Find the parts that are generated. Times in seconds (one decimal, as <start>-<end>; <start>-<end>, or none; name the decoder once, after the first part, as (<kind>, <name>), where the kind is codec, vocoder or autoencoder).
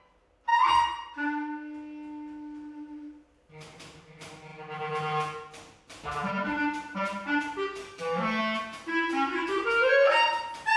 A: 7.8-8.4 (codec, DAC)